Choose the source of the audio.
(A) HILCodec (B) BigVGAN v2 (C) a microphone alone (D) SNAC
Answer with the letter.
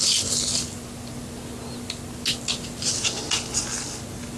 C